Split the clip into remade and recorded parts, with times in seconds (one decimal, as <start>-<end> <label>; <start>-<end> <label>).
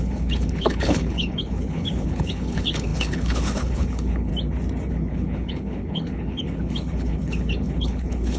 0.0-4.3 remade; 4.3-4.9 recorded; 4.9-8.4 remade